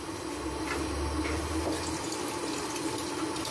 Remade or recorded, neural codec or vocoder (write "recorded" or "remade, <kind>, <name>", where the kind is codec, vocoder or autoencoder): recorded